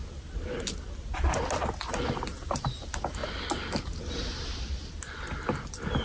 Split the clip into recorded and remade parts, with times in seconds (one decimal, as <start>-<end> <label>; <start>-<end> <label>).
0.0-6.0 recorded